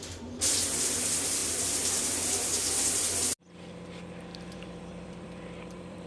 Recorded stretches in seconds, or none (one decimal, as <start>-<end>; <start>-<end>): 0.0-1.4; 2.3-4.3